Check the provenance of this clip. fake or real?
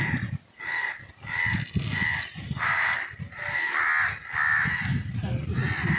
real